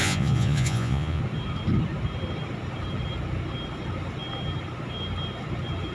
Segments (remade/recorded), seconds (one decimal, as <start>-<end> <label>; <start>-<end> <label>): 0.0-1.2 remade; 1.2-5.9 recorded

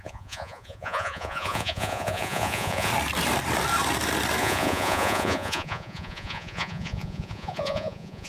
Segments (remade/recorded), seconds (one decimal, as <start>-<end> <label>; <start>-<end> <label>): 0.0-2.9 remade; 2.9-4.4 recorded; 4.4-8.3 remade

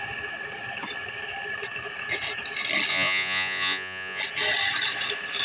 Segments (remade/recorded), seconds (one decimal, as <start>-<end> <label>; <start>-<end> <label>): 0.0-2.9 recorded; 2.9-4.2 remade; 4.2-5.4 recorded

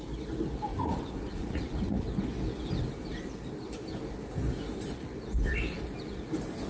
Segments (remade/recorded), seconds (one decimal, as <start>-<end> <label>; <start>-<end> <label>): 0.0-0.7 recorded; 0.7-2.0 remade; 2.0-6.7 recorded

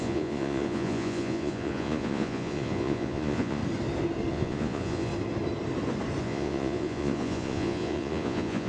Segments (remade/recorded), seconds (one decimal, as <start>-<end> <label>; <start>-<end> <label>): 0.0-3.6 remade; 3.6-4.3 recorded; 4.3-5.1 remade; 5.1-6.2 recorded; 6.2-8.7 remade

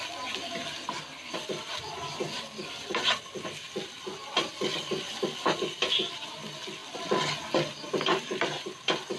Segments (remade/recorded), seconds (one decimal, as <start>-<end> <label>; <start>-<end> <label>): 0.0-9.2 recorded

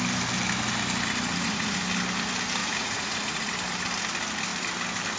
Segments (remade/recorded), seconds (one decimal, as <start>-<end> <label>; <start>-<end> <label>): 0.0-1.3 recorded; 1.3-1.8 remade; 1.8-2.6 recorded; 2.6-3.5 remade; 3.5-5.2 recorded

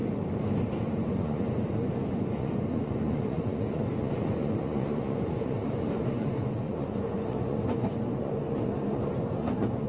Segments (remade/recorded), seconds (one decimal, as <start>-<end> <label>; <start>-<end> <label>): 0.0-1.1 recorded; 1.1-9.9 remade